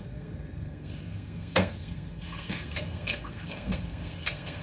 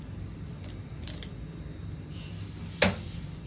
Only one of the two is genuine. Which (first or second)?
second